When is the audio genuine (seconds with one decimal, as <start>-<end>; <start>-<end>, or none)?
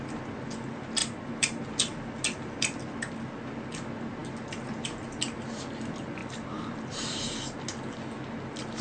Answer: 0.0-1.0; 1.6-6.2; 7.6-8.8